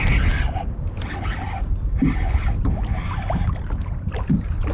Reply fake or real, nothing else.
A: real